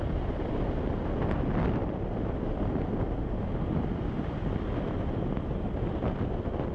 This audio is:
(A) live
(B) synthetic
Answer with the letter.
A